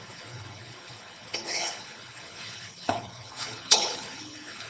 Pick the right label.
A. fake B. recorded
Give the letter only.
A